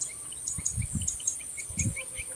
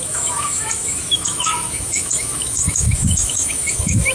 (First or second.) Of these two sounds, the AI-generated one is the second